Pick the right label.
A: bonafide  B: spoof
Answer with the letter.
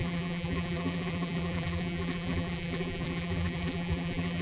B